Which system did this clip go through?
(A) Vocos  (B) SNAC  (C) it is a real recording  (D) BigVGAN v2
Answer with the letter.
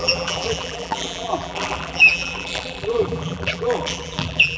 D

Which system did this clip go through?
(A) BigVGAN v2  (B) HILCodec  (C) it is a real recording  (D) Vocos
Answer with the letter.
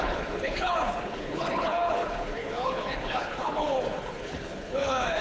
B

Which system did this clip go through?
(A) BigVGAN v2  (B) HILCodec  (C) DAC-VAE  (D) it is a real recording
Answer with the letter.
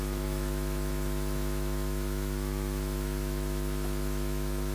C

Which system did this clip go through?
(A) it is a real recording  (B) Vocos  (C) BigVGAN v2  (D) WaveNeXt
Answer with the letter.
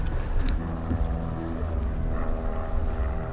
A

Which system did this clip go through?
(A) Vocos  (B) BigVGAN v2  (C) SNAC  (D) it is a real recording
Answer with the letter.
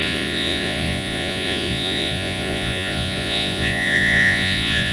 A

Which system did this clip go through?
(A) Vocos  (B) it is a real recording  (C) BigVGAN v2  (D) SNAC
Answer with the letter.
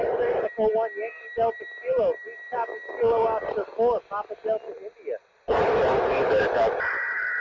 B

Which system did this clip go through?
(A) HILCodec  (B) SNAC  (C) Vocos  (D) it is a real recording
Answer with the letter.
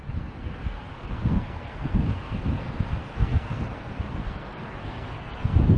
B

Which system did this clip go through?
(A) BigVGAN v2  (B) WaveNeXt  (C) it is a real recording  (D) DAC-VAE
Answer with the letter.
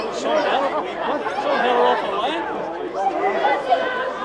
C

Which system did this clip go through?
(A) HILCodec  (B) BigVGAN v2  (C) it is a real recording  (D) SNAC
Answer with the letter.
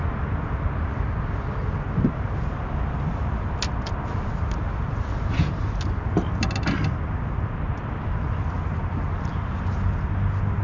C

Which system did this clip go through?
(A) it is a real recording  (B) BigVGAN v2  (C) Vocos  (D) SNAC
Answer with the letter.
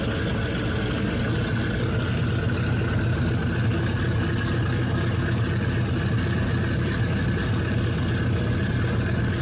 A